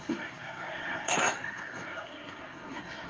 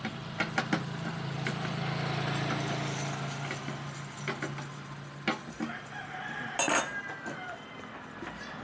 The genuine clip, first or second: second